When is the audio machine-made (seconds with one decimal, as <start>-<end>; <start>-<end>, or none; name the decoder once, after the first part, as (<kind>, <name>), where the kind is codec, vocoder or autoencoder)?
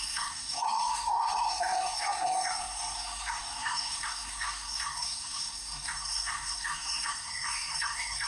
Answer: 0.0-8.3 (codec, SNAC)